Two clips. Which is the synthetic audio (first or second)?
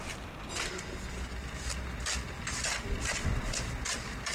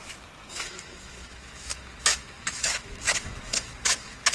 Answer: second